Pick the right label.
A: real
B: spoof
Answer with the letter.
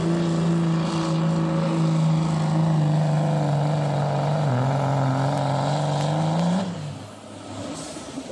A